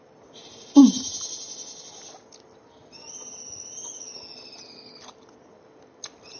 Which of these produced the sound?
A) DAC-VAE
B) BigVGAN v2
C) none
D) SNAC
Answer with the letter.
C